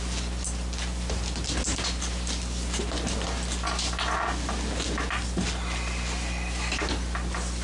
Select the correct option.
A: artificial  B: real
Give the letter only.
B